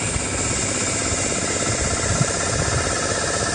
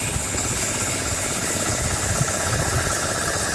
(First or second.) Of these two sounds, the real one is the first